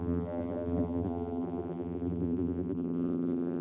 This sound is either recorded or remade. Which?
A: remade